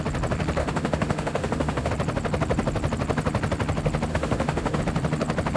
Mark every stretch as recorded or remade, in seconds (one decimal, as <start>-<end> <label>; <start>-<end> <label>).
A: 0.0-0.6 recorded; 0.6-1.9 remade; 1.9-4.1 recorded; 4.1-4.8 remade; 4.8-5.6 recorded